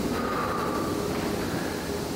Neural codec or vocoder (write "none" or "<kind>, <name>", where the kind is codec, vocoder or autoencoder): none